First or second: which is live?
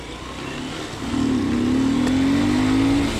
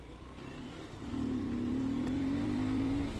first